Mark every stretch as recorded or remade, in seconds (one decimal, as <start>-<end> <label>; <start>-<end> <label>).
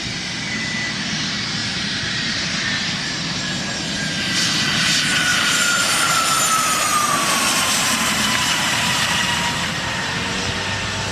0.0-1.6 recorded; 1.6-2.7 remade; 2.7-5.3 recorded; 5.3-6.2 remade; 6.2-6.9 recorded; 6.9-9.2 remade; 9.2-11.1 recorded